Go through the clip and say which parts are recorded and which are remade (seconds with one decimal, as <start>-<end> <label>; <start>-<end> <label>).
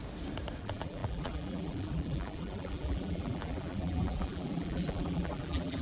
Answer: 0.0-0.6 recorded; 0.6-5.8 remade